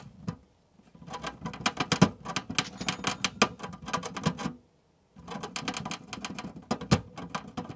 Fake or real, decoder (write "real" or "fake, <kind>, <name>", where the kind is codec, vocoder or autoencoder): real